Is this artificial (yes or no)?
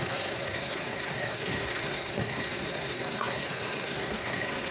yes